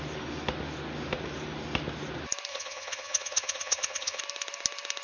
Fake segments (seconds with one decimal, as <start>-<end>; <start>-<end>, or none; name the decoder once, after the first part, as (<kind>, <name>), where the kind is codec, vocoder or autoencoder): 2.5-4.2 (vocoder, HiFi-GAN)